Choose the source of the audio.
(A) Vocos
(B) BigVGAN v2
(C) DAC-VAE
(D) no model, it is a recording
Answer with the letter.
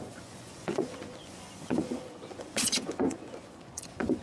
A